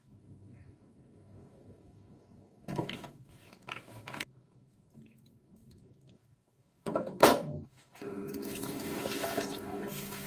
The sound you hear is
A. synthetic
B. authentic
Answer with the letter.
A